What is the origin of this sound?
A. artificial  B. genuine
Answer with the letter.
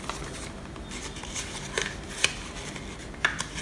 B